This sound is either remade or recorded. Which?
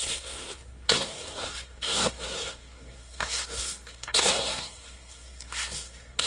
remade